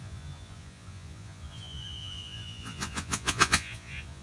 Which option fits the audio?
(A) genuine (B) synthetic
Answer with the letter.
B